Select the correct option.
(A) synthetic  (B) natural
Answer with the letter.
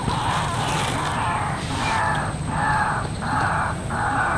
B